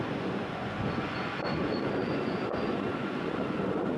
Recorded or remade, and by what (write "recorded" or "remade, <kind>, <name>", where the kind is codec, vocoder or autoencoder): remade, vocoder, Vocos